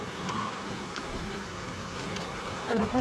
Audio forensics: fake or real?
fake